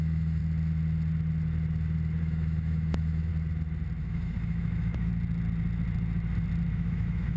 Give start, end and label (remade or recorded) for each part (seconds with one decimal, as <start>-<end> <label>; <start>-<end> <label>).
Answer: 0.0-0.4 remade; 0.4-2.2 recorded; 2.2-3.3 remade; 3.3-4.0 recorded; 4.0-5.1 remade; 5.1-6.7 recorded; 6.7-7.4 remade